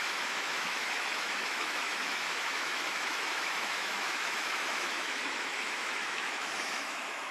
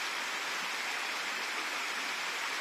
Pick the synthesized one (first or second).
first